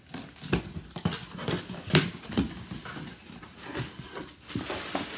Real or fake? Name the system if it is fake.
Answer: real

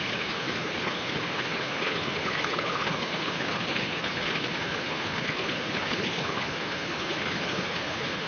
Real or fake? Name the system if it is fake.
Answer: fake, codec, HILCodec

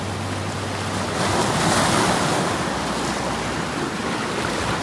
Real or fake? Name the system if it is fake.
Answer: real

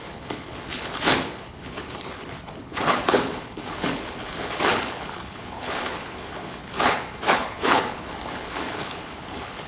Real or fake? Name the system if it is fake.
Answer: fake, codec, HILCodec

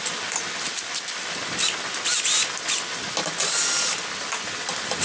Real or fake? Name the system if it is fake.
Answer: real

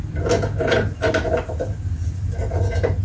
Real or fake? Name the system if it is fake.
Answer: real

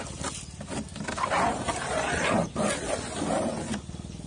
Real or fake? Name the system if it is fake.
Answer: real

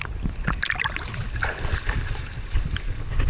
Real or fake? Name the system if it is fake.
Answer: real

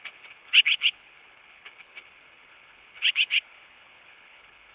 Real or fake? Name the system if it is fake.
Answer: fake, codec, HILCodec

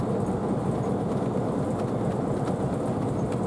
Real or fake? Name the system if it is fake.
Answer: real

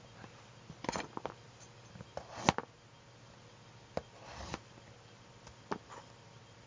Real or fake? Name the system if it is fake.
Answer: real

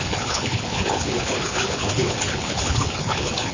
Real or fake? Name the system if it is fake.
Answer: fake, codec, HILCodec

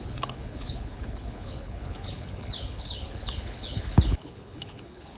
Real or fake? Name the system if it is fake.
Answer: fake, codec, HILCodec